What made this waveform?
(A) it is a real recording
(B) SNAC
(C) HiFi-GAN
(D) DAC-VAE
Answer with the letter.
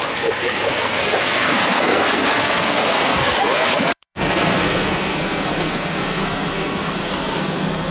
B